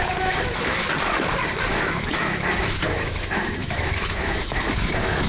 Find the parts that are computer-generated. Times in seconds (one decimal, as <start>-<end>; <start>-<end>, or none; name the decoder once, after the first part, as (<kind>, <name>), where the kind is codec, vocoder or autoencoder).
0.0-0.8 (autoencoder, DAC-VAE); 1.7-5.3